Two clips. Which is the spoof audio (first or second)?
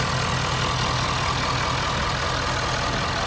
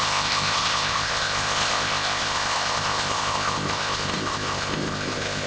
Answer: second